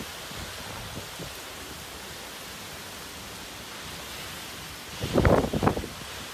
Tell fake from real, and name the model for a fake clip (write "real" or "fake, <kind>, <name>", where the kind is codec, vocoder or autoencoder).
real